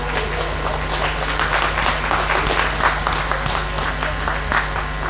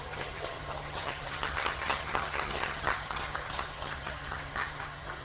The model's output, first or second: second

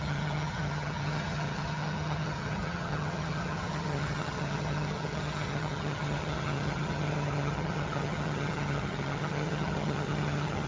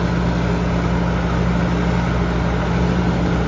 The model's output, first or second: first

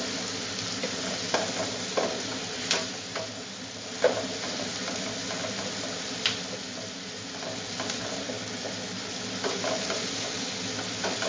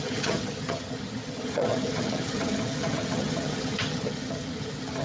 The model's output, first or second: second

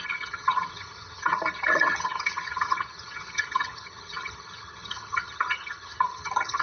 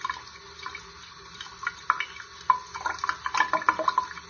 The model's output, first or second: first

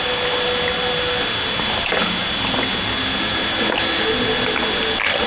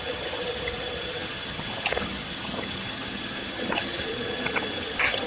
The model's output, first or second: second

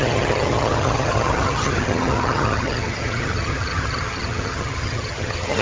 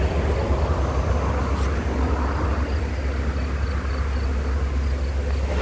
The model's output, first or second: first